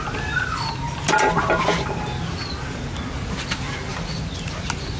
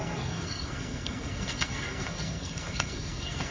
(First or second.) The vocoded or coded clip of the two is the second